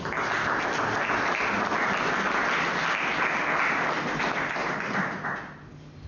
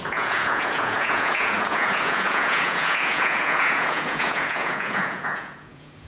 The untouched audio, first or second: first